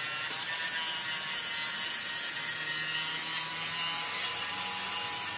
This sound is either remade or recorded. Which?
recorded